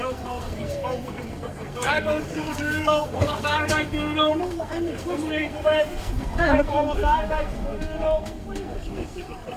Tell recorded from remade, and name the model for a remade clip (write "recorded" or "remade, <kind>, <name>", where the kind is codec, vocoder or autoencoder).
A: remade, codec, SNAC